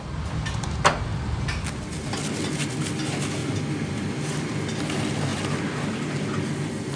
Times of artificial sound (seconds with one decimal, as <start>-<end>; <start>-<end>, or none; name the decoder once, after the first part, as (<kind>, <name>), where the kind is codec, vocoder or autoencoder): 3.4-4.6 (vocoder, BigVGAN v2)